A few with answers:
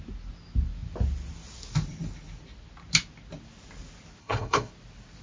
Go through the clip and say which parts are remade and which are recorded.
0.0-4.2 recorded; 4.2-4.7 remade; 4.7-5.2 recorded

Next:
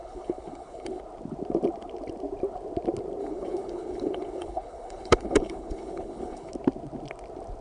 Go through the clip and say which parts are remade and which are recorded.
0.0-1.0 remade; 1.0-3.2 recorded; 3.2-6.5 remade; 6.5-7.6 recorded

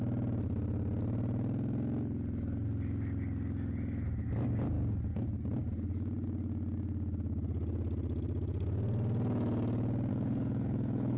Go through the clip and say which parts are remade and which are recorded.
0.0-10.1 recorded; 10.1-11.2 remade